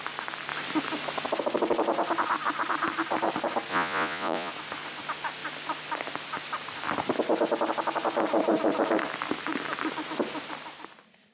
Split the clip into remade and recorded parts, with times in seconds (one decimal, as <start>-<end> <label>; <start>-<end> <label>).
0.0-3.7 recorded; 3.7-4.5 remade; 4.5-11.3 recorded